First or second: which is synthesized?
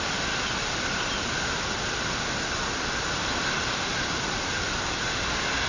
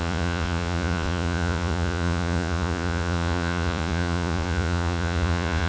second